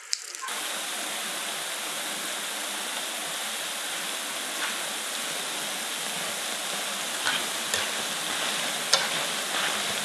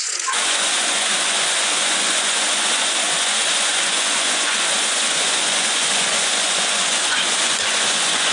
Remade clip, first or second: second